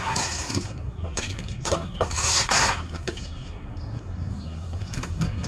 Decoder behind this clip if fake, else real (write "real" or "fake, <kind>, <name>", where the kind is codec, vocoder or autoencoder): fake, codec, SNAC